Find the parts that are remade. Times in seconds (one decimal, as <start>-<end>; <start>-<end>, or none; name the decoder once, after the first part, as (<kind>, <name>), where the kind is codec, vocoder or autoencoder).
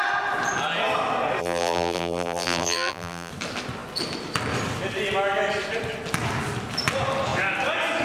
1.4-3.3 (vocoder, BigVGAN v2)